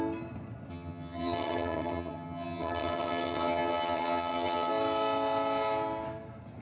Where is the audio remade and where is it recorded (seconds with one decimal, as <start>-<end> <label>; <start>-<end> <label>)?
0.0-0.7 recorded; 0.7-4.7 remade; 4.7-6.6 recorded